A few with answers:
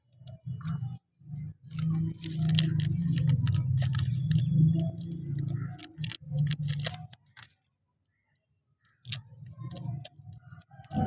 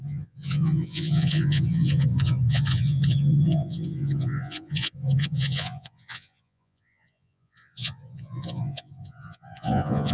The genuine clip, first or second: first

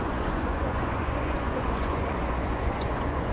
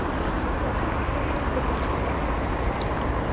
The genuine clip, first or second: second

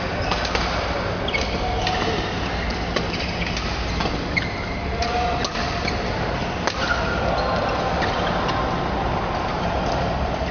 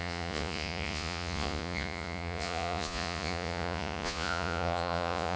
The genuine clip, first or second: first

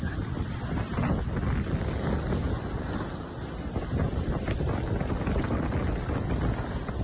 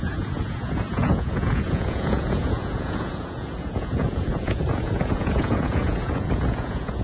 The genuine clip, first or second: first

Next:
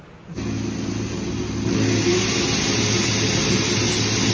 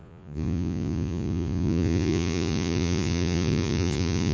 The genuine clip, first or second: first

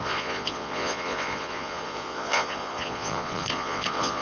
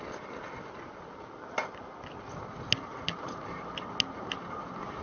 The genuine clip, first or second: second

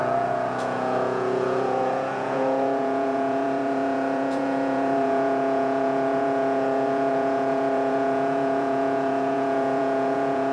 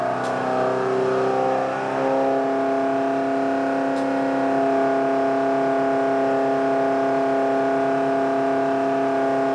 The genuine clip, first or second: second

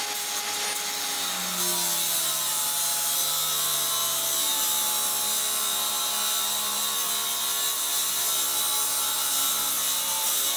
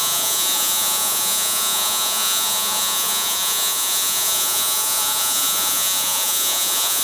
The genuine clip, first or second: first